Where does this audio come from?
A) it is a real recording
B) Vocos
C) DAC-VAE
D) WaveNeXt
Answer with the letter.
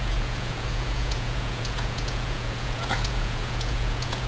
B